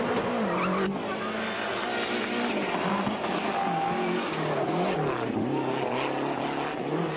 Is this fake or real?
real